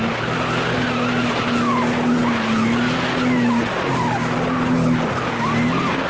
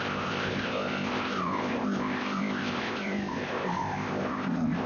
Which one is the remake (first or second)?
second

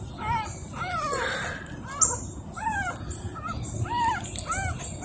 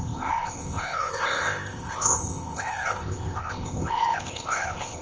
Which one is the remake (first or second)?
second